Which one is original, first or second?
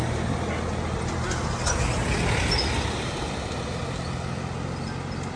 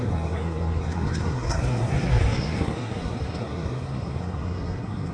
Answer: first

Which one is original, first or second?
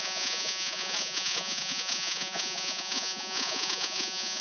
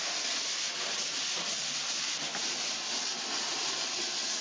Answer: second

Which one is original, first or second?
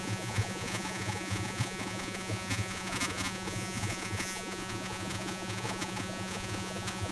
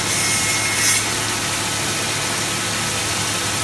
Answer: second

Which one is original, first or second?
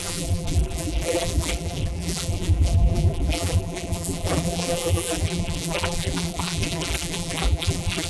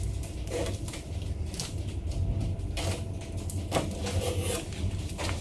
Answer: second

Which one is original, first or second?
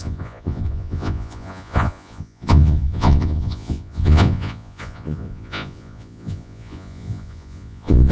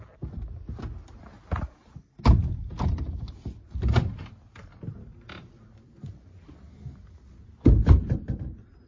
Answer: second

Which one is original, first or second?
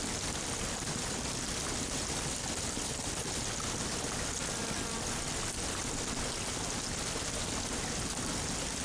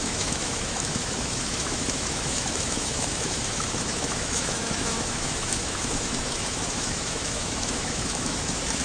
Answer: first